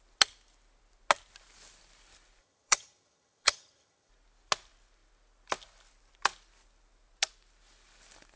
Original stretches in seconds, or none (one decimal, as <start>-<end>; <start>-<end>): 0.0-2.4; 4.1-8.4